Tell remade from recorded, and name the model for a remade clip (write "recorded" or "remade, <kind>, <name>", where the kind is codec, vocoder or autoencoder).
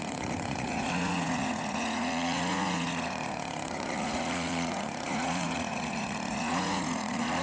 remade, vocoder, Vocos